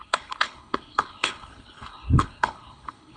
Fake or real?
fake